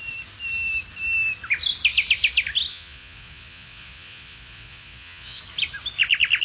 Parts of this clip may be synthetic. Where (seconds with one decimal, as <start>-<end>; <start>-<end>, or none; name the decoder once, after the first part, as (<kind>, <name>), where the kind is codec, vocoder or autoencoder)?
2.7-5.4 (vocoder, Vocos)